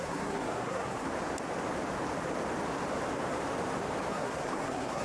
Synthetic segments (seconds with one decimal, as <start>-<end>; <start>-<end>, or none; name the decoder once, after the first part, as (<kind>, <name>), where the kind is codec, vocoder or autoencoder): 0.0-1.1 (codec, SNAC); 4.1-5.0